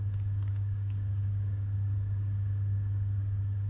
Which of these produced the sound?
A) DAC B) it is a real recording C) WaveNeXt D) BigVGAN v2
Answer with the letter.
A